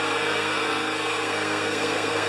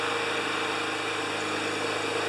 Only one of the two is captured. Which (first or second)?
second